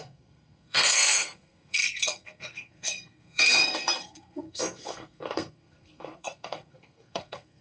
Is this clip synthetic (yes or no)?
yes